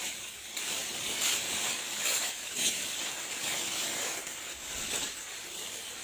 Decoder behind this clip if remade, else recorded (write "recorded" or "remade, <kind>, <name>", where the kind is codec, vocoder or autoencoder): remade, codec, DAC